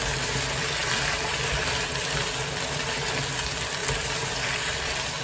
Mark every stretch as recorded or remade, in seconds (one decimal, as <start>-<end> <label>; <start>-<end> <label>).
0.0-5.2 recorded